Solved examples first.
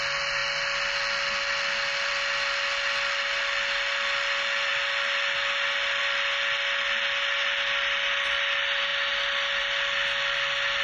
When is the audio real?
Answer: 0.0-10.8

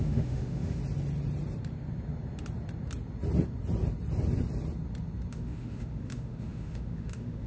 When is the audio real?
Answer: 0.8-5.3

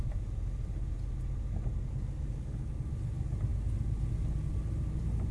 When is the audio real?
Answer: 0.0-5.3

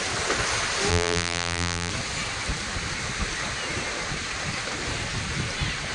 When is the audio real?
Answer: 0.0-0.9; 1.9-5.9

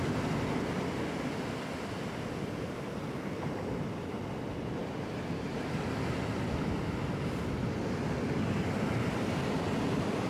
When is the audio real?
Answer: 0.0-10.3

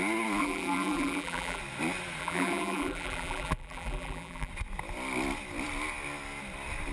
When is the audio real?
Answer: 0.0-0.4; 1.6-2.2; 4.5-6.9

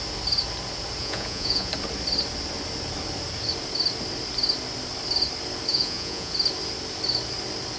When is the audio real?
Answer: 0.0-1.0; 1.7-5.7; 6.3-7.8